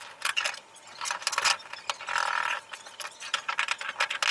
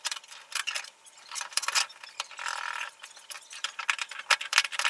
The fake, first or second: second